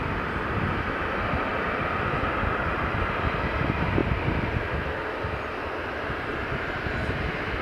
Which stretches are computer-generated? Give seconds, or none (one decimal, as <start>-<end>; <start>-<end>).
0.0-4.0; 6.0-7.6